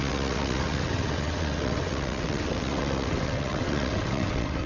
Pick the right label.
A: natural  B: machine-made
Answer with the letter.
B